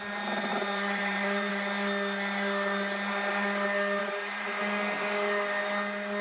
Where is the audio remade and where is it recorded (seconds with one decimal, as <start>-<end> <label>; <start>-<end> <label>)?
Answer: 0.0-0.5 recorded; 0.5-1.5 remade; 1.5-4.0 recorded; 4.0-4.6 remade; 4.6-6.2 recorded